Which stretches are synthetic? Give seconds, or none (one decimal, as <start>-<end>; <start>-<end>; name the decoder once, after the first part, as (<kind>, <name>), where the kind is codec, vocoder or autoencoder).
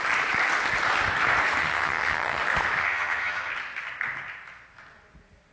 1.6-2.4 (vocoder, HiFi-GAN); 2.8-3.5